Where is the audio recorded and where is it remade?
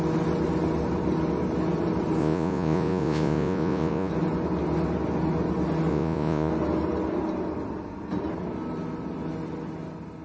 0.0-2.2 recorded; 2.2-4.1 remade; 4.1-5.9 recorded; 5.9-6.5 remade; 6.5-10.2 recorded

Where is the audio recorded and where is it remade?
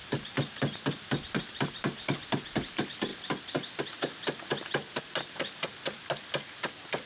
0.0-7.1 recorded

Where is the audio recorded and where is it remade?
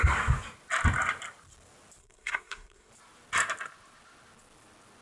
0.0-2.0 recorded; 2.0-2.9 remade; 2.9-5.0 recorded